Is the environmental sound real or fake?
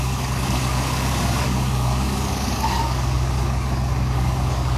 fake